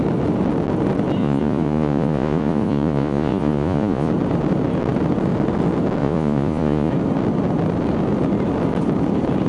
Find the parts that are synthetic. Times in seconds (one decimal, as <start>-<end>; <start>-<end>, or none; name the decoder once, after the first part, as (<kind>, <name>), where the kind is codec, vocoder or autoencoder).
1.2-4.1 (vocoder, Vocos); 6.0-6.9